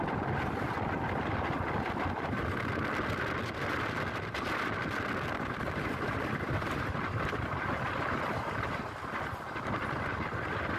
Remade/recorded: recorded